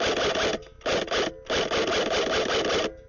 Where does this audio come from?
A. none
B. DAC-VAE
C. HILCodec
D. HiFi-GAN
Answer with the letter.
A